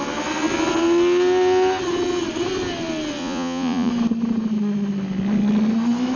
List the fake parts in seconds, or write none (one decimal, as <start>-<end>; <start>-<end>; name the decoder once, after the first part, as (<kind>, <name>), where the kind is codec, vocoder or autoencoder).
3.2-3.9 (vocoder, Vocos)